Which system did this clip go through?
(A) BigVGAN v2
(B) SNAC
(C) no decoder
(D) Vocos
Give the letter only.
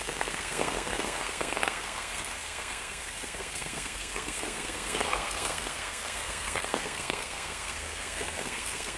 B